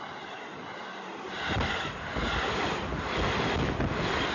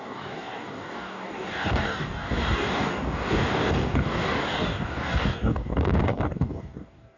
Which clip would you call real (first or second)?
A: first